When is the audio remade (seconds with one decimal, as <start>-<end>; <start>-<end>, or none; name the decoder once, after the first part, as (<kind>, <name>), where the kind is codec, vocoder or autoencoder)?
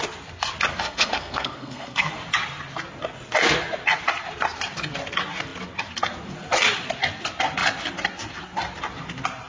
0.7-2.1 (codec, SNAC)